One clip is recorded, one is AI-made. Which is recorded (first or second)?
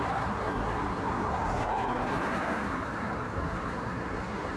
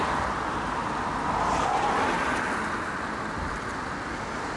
second